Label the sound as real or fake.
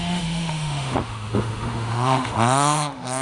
fake